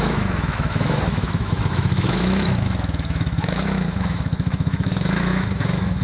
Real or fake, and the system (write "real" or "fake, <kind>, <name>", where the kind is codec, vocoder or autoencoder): fake, autoencoder, DAC-VAE